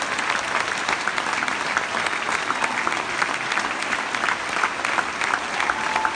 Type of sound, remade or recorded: recorded